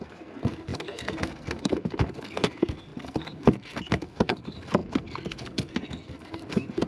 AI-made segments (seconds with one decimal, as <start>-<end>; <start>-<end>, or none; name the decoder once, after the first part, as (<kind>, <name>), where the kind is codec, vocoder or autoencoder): 0.0-6.9 (codec, SNAC)

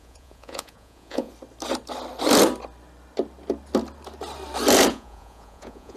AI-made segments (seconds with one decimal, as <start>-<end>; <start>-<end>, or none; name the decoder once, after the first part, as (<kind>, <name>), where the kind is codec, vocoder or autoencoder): 0.0-1.3 (vocoder, Vocos); 4.9-6.0

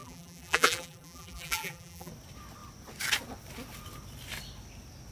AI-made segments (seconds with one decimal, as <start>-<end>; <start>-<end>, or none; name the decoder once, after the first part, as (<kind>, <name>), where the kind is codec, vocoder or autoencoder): 0.0-2.1 (vocoder, BigVGAN v2)